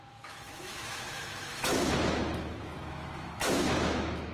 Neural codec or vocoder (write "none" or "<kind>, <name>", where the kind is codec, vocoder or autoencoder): autoencoder, DAC-VAE